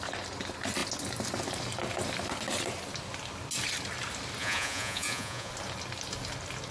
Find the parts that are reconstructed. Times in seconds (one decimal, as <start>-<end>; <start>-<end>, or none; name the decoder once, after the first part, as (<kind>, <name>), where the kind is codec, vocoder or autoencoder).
4.4-5.5 (vocoder, Vocos)